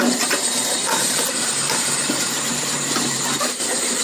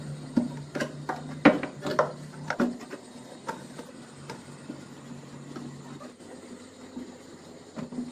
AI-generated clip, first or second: first